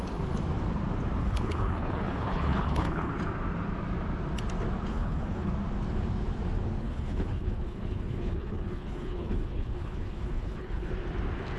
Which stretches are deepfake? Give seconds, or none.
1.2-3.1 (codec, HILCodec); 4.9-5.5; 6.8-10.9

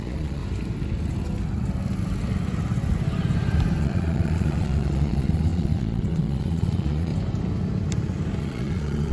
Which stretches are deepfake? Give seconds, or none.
0.0-0.4 (vocoder, Vocos); 3.8-7.1; 8.4-9.1